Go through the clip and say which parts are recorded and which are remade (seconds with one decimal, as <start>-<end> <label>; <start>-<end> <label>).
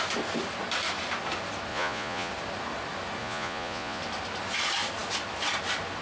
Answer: 0.0-1.7 recorded; 1.7-2.3 remade; 2.3-3.2 recorded; 3.2-4.0 remade; 4.0-6.0 recorded